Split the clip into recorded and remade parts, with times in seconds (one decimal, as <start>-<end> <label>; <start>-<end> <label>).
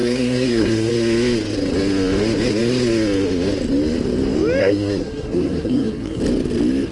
0.0-0.9 remade; 0.9-4.6 recorded; 4.6-6.2 remade; 6.2-6.9 recorded